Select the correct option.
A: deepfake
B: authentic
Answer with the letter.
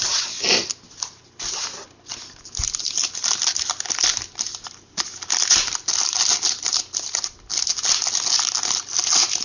B